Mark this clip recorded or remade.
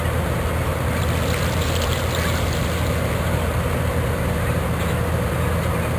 recorded